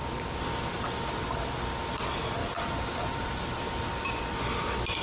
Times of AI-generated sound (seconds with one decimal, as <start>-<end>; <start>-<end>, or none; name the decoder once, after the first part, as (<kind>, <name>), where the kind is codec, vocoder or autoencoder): 0.7-1.4 (vocoder, BigVGAN v2); 2.4-4.1